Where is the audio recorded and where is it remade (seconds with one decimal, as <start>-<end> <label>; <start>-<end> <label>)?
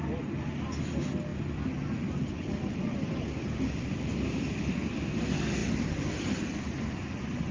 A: 0.0-1.3 recorded; 1.3-4.4 remade; 4.4-7.5 recorded